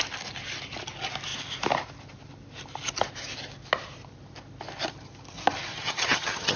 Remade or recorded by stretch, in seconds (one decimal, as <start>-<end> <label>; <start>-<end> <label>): 0.0-5.7 recorded; 5.7-6.6 remade